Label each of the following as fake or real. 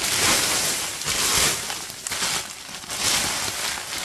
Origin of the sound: real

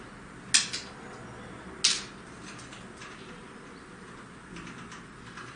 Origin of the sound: real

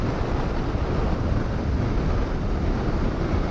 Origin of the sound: real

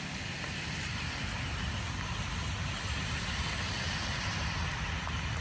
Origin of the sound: real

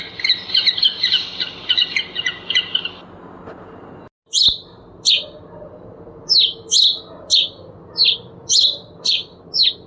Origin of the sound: real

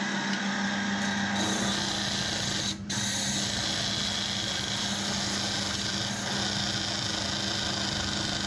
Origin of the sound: real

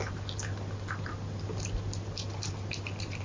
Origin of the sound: real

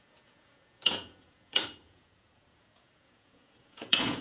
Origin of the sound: fake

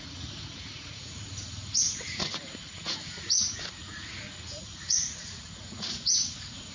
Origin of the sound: fake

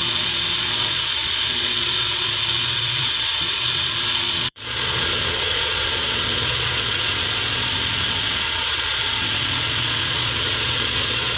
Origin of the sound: fake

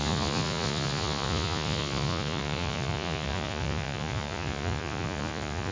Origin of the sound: fake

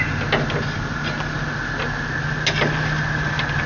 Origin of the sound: real